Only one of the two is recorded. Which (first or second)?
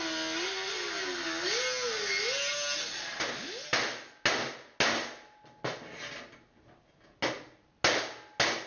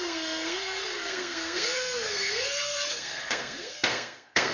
first